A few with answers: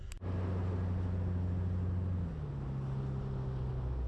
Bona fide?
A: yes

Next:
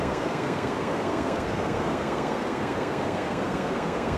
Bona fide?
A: no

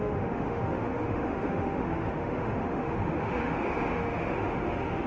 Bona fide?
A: no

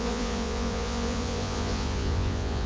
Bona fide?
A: no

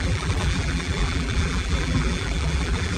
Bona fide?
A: no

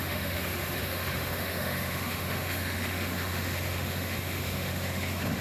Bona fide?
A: no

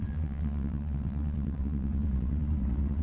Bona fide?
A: no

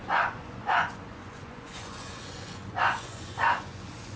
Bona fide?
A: no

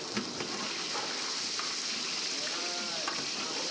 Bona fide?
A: yes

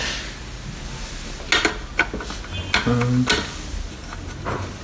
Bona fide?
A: yes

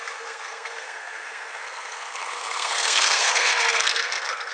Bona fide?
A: no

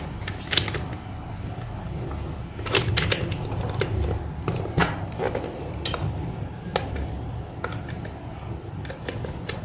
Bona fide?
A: yes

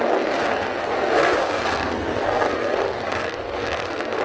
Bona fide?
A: no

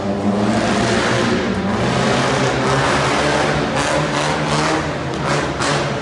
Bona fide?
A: yes